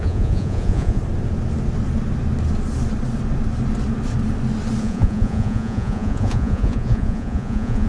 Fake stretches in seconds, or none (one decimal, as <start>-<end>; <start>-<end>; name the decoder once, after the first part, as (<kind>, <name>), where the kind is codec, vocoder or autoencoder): 0.0-1.0 (vocoder, Vocos); 4.8-7.9